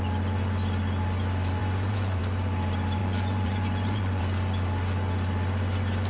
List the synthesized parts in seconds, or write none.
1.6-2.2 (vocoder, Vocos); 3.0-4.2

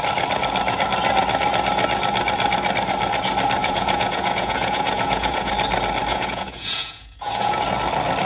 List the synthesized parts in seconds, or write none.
3.6-5.5 (vocoder, Vocos); 6.1-7.6

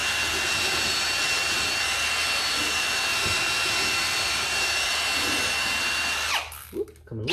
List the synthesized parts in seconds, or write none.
none

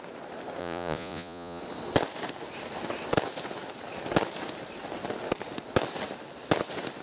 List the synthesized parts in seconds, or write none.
0.6-1.6 (vocoder, Vocos)